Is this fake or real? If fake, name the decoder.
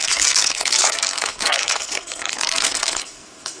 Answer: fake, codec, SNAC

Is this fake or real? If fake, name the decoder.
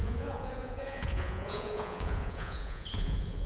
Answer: fake, vocoder, Vocos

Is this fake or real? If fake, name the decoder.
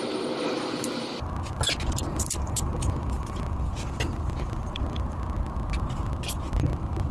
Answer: real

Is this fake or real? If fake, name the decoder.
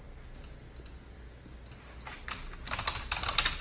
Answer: real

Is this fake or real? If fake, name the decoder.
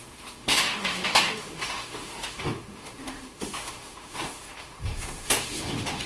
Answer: fake, autoencoder, DAC-VAE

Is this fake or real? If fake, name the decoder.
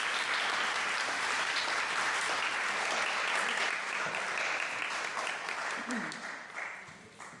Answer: fake, vocoder, BigVGAN v2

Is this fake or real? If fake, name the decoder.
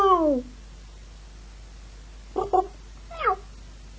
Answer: real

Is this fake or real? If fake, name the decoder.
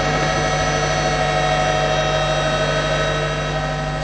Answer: real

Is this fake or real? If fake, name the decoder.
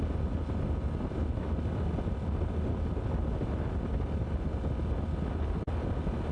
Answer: real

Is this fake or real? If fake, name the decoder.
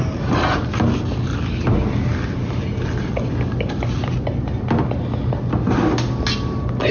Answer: real